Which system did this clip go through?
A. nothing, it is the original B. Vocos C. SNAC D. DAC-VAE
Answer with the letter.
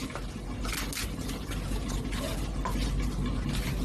A